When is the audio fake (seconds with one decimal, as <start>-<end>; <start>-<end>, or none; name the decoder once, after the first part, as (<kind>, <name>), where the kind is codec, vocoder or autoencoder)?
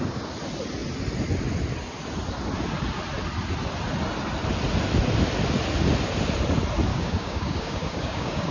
6.9-8.5 (codec, DAC)